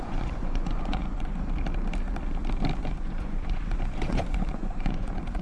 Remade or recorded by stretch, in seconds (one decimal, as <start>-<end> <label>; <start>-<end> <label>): 0.0-1.3 remade; 1.3-2.8 recorded; 2.8-5.4 remade